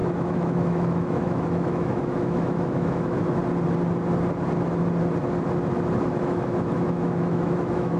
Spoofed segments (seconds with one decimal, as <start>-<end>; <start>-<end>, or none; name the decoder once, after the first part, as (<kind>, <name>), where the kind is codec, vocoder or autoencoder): 0.0-3.4 (autoencoder, DAC-VAE); 6.0-8.0